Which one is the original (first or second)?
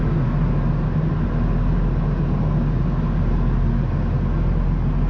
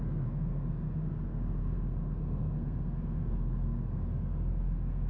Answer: first